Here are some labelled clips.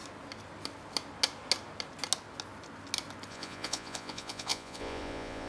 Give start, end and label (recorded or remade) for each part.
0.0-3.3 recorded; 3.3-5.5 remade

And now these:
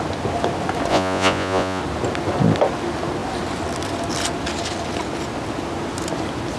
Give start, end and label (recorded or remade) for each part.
0.0-0.9 recorded; 0.9-1.8 remade; 1.8-6.6 recorded

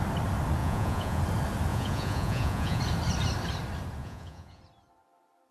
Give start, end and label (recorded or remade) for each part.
0.0-0.6 recorded; 0.6-1.2 remade; 1.2-1.7 recorded; 1.7-2.8 remade; 2.8-4.0 recorded; 4.0-4.6 remade; 4.6-5.5 recorded